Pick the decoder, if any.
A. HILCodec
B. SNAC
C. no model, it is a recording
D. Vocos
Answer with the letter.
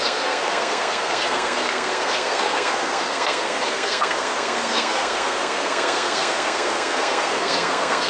B